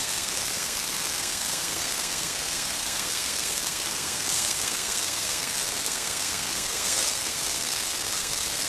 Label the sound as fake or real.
fake